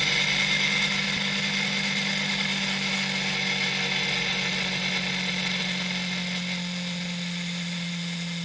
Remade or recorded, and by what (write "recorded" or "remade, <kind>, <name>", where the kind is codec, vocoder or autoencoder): recorded